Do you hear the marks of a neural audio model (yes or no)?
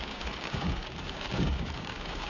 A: yes